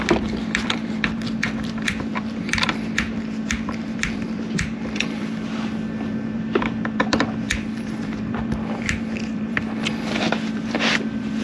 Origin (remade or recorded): remade